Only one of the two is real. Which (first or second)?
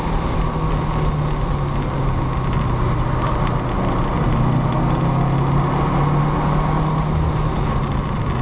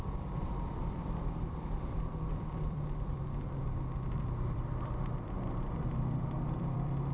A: first